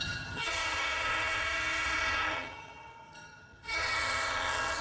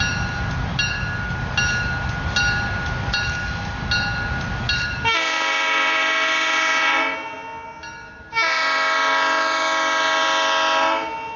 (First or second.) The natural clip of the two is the second